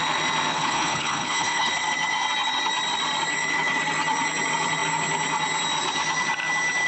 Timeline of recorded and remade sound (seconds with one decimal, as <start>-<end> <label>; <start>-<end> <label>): 0.0-0.5 recorded; 0.5-1.7 remade; 1.7-6.9 recorded